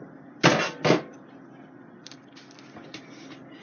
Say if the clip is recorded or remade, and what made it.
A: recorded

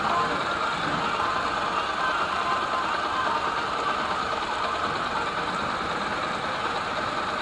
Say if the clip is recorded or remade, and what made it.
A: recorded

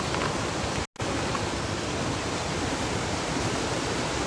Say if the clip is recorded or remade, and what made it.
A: recorded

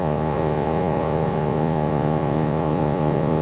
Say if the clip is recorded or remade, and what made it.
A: remade, vocoder, Vocos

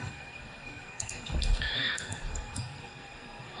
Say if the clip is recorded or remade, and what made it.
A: remade, codec, SNAC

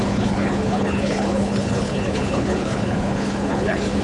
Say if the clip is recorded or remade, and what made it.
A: remade, codec, HILCodec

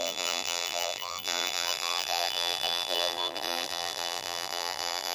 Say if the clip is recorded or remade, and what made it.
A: remade, vocoder, BigVGAN v2